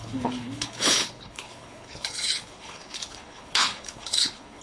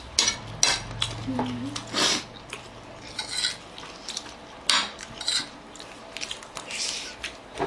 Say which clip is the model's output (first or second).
first